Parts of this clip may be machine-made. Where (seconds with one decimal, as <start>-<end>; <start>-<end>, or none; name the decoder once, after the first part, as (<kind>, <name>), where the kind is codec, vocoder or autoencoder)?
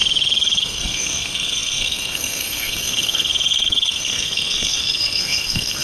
0.6-5.8 (codec, SNAC)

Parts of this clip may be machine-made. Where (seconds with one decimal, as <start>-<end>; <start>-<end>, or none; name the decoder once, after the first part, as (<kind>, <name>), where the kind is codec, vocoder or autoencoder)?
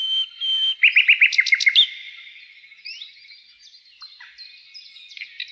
none